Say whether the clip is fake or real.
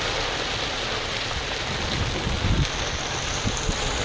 real